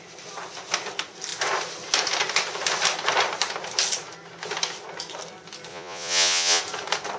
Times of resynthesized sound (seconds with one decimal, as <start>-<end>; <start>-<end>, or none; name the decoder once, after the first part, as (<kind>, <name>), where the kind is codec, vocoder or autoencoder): 5.7-6.6 (vocoder, Vocos)